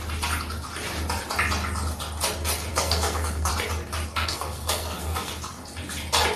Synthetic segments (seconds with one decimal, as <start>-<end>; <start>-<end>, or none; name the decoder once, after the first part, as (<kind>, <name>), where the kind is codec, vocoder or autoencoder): 2.7-3.5 (codec, SNAC); 4.1-5.3